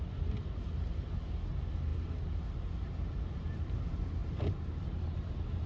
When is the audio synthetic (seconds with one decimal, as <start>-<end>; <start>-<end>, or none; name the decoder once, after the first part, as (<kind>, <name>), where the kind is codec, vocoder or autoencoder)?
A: none